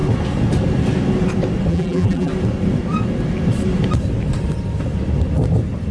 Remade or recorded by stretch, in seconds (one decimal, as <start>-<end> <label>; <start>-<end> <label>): 0.0-1.7 recorded; 1.7-2.3 remade; 2.3-5.9 recorded